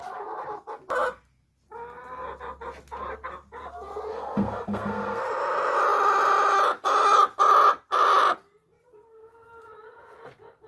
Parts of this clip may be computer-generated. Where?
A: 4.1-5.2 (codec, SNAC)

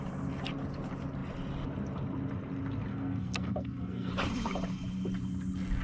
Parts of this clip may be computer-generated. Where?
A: 2.9-4.1 (codec, SNAC)